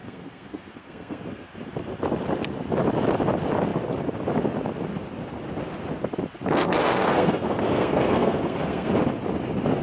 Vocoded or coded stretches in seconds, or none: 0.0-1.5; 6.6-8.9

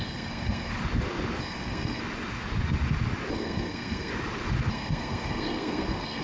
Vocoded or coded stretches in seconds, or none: 0.0-0.7; 1.4-2.0; 3.3-4.1; 4.7-6.2

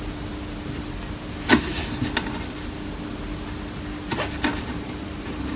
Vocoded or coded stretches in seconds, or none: 4.5-5.6

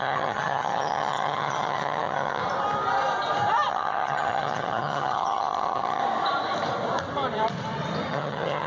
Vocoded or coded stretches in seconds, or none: 0.0-2.4; 3.7-6.0; 8.1-8.7

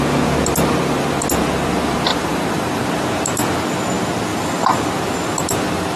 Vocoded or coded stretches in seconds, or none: 2.1-2.9; 4.3-4.8

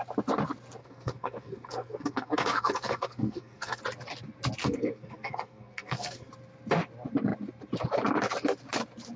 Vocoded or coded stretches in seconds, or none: 0.8-3.8; 4.6-6.3

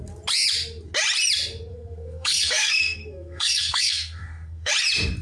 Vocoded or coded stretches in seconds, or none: 1.7-4.7

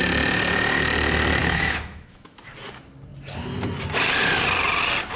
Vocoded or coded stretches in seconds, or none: 1.4-2.5